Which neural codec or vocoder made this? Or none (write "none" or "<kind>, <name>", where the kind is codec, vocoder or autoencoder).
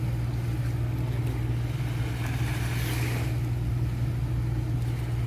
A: none